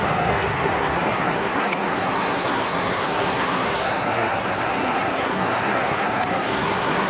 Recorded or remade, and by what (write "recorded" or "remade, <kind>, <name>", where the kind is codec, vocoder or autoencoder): remade, codec, SNAC